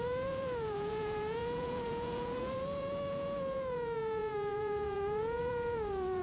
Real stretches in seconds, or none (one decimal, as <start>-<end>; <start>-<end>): none